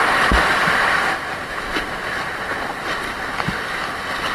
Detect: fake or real real